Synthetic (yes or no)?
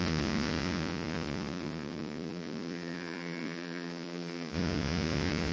yes